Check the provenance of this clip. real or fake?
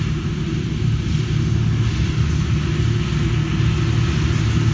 real